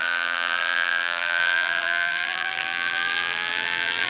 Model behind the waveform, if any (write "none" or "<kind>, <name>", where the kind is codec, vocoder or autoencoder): vocoder, BigVGAN v2